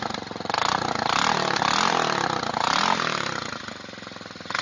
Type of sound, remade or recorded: recorded